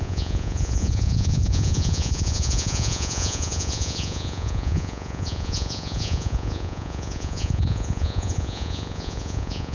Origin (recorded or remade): remade